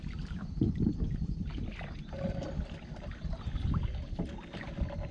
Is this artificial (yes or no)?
no